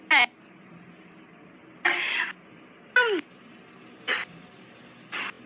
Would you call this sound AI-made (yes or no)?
no